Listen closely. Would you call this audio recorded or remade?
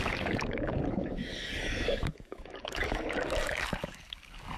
remade